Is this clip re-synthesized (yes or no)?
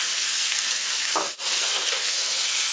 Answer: yes